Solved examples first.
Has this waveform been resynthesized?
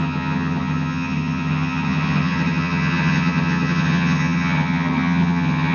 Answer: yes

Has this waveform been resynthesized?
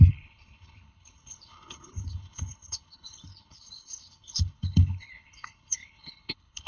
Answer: yes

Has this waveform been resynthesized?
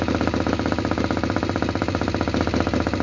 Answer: no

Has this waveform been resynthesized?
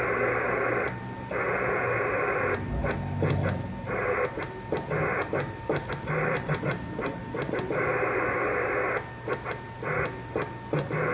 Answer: no